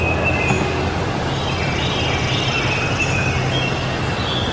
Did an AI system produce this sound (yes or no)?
no